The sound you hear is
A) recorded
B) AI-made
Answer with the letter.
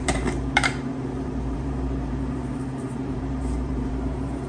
B